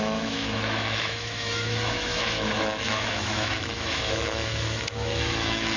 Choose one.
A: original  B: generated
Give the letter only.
B